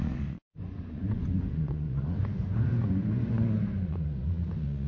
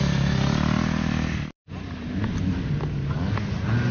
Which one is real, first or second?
second